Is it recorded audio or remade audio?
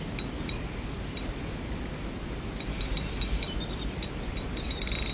recorded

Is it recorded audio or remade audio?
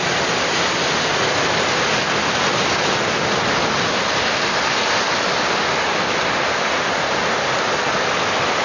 recorded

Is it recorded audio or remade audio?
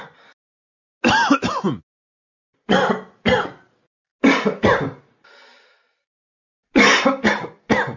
recorded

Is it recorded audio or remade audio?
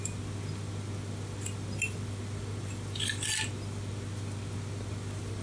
recorded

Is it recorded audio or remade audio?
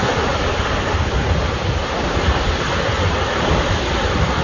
recorded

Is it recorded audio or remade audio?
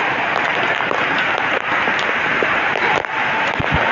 recorded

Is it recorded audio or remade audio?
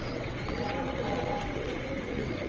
remade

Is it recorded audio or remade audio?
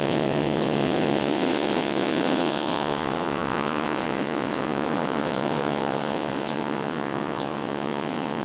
remade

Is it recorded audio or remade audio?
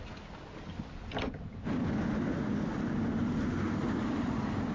recorded